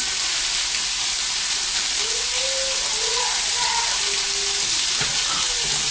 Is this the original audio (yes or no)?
yes